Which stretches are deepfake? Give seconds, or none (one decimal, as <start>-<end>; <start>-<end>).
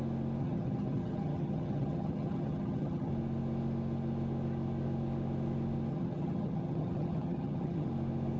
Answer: 0.4-3.1; 5.9-7.9